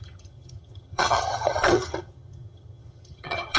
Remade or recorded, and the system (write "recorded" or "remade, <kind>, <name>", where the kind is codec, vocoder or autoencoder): remade, vocoder, HiFi-GAN